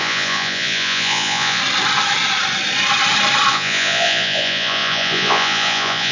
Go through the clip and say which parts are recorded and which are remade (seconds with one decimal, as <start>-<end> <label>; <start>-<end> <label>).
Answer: 0.0-1.6 remade; 1.6-3.5 recorded; 3.5-6.1 remade